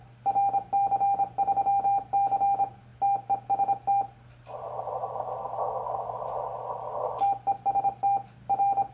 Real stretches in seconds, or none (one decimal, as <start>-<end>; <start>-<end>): 0.0-8.9